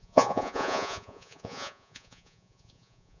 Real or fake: fake